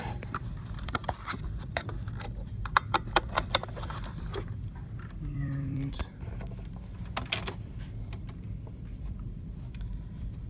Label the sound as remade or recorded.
remade